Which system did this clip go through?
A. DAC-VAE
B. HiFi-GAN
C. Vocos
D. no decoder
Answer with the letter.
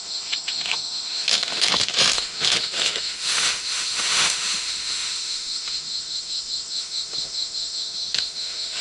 A